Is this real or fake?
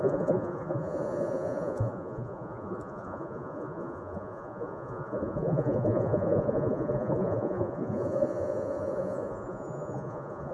fake